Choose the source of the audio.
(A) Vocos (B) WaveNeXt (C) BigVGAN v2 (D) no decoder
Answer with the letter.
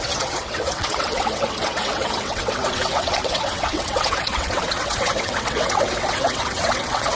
B